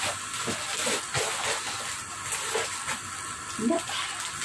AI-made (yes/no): no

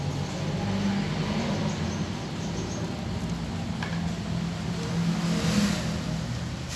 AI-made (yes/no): no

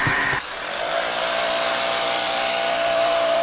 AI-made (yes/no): yes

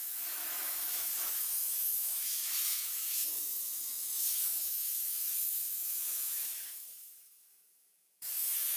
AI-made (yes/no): yes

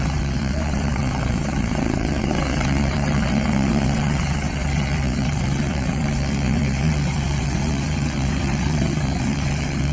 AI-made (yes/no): yes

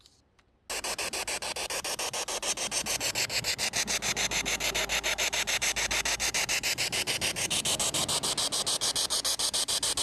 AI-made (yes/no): no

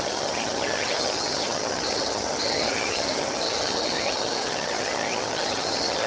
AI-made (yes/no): yes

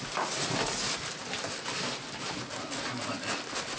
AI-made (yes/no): no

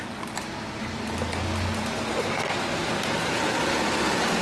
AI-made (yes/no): no